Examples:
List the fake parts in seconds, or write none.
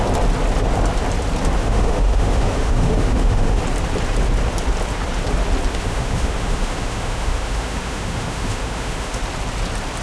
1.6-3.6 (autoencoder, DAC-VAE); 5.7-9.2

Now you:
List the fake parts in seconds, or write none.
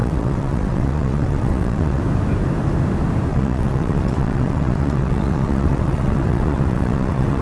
0.0-2.0 (vocoder, WaveNeXt); 3.3-7.4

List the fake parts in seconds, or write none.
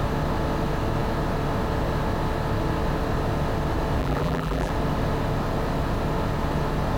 4.0-4.7 (vocoder, BigVGAN v2)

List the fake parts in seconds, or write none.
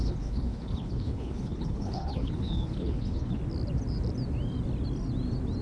0.0-3.4 (codec, HILCodec)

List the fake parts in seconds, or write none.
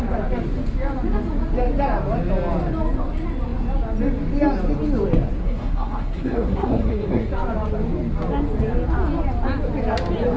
5.4-7.3 (codec, SNAC)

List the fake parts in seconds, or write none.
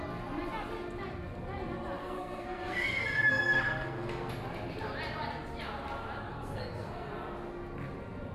2.0-4.3 (codec, SNAC); 6.3-7.1